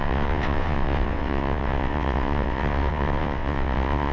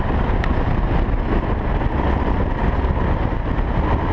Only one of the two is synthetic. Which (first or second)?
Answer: first